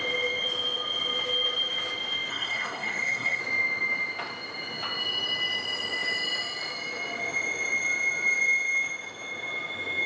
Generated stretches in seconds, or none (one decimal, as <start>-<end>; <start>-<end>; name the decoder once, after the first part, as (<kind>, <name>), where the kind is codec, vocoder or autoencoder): 2.3-3.4 (codec, SNAC)